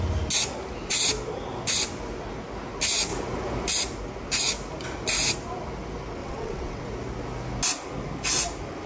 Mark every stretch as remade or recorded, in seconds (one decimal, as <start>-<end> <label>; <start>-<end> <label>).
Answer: 0.0-6.2 recorded; 6.2-6.8 remade; 6.8-8.9 recorded